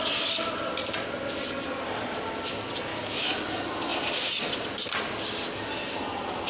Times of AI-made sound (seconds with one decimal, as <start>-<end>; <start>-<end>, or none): 2.9-3.4